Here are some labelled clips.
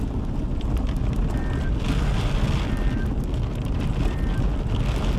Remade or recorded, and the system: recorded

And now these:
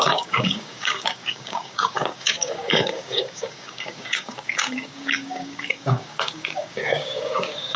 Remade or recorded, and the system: remade, codec, DAC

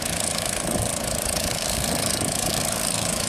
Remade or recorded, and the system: remade, codec, DAC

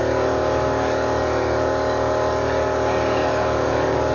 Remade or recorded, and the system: remade, codec, DAC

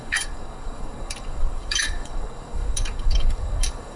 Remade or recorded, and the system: remade, codec, DAC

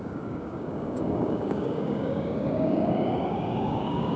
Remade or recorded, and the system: remade, codec, DAC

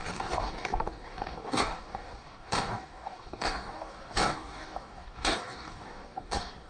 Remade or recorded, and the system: remade, codec, DAC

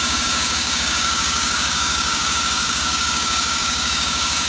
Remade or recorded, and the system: remade, codec, DAC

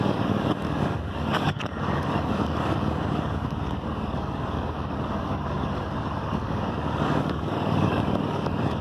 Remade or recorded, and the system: remade, codec, DAC